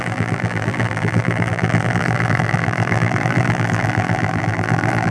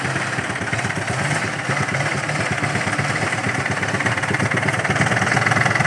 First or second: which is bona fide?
second